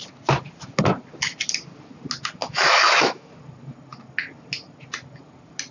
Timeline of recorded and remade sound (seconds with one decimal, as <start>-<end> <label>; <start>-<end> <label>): 0.0-2.4 recorded; 2.4-3.3 remade; 3.3-5.7 recorded